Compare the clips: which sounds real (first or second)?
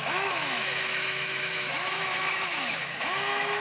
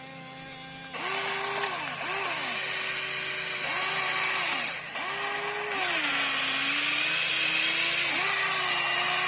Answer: second